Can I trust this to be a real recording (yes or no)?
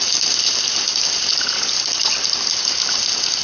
yes